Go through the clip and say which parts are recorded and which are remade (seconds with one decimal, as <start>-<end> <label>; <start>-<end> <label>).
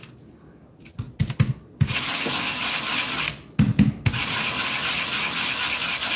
0.0-6.2 recorded